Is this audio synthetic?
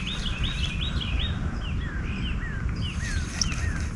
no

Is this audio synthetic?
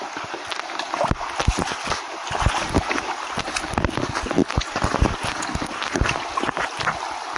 no